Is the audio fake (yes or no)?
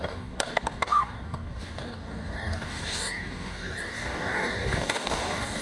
yes